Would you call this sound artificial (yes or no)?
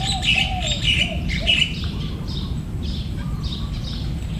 yes